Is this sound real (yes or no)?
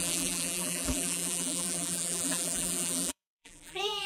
no